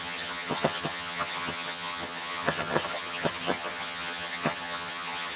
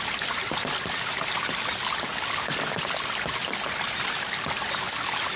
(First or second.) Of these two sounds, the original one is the second